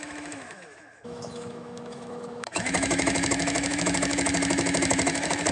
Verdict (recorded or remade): remade